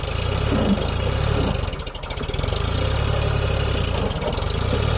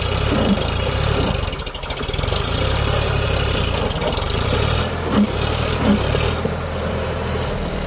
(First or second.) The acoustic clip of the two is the first